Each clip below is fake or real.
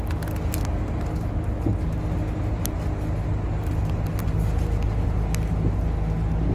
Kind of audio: real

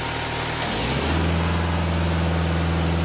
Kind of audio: real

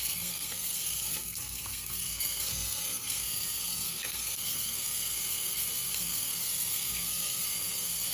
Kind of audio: fake